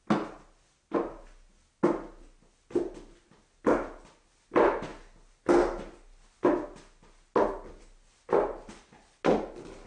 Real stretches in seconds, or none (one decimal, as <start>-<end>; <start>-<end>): 0.0-9.9